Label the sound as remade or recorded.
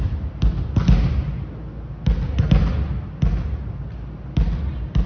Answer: recorded